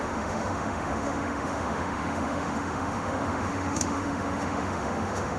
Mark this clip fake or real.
fake